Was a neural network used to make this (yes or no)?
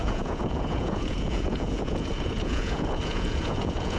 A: yes